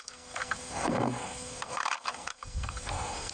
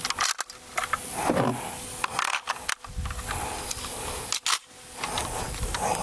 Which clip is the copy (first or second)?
first